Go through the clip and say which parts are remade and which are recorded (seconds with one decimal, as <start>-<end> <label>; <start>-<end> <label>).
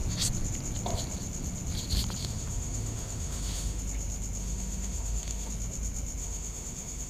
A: 0.0-2.2 recorded; 2.2-3.8 remade; 3.8-4.4 recorded; 4.4-5.5 remade; 5.5-6.2 recorded; 6.2-7.1 remade